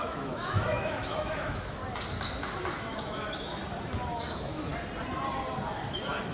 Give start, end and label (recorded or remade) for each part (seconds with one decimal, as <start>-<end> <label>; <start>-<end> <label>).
0.0-1.8 remade; 1.8-2.8 recorded; 2.8-3.6 remade; 3.6-4.2 recorded; 4.2-4.7 remade; 4.7-6.3 recorded